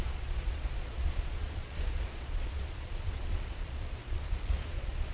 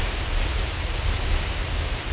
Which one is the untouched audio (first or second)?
second